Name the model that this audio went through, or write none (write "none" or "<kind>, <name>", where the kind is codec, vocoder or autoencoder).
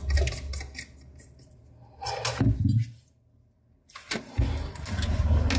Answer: none